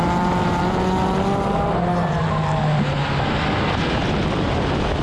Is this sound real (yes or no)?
yes